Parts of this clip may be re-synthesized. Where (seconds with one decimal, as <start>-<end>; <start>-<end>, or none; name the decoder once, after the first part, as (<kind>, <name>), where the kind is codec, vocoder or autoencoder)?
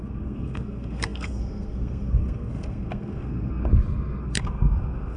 0.0-3.7 (codec, SNAC); 4.2-5.2